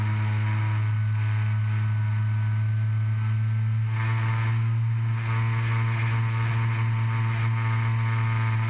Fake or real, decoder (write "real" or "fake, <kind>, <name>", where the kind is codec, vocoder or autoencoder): real